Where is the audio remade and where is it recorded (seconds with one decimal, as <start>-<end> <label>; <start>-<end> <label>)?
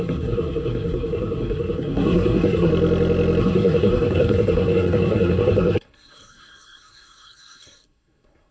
0.0-2.7 remade; 2.7-3.4 recorded; 3.4-8.5 remade